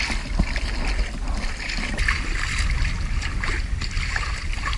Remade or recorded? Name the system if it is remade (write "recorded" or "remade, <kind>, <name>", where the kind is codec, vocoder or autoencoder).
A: recorded